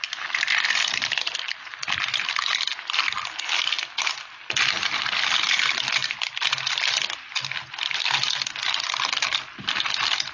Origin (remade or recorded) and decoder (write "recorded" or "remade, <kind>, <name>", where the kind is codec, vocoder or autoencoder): recorded